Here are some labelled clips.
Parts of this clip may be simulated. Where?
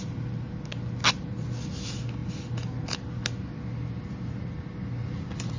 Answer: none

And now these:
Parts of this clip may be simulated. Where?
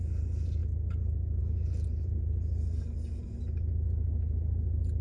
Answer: none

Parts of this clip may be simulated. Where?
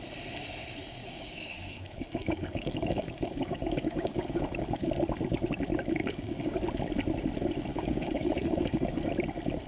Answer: 1.0-4.9 (codec, DAC); 6.0-6.6; 7.7-9.1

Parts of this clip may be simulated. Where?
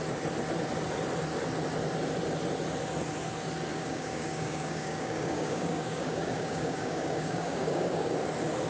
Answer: 3.7-8.1 (codec, DAC)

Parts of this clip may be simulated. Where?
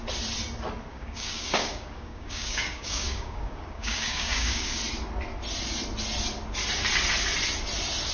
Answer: 0.9-4.8 (codec, DAC)